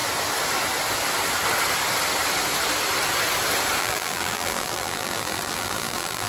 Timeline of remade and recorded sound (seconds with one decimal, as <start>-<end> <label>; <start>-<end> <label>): 0.0-3.8 recorded; 3.8-6.3 remade